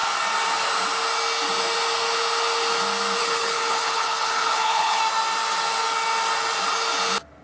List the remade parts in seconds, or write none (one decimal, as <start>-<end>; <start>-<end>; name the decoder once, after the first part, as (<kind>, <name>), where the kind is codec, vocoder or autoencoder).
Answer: 3.2-5.0 (codec, HILCodec)